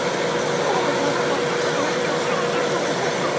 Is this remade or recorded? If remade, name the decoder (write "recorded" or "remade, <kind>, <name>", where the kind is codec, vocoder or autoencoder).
recorded